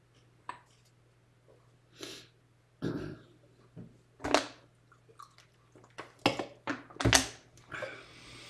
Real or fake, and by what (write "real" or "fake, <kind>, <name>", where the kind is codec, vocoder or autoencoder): real